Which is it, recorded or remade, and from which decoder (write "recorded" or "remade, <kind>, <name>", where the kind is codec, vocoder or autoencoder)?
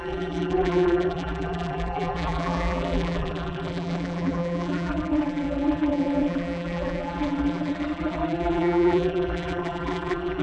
remade, vocoder, BigVGAN v2